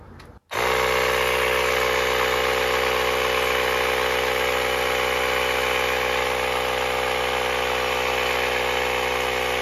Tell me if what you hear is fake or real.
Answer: real